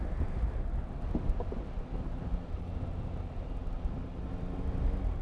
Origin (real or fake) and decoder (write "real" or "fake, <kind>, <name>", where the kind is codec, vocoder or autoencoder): real